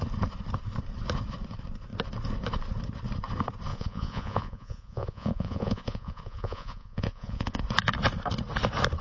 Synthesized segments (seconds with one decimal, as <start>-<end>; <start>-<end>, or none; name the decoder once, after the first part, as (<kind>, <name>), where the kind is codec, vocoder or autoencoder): 3.7-7.6 (vocoder, Vocos)